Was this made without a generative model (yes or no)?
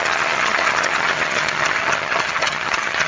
no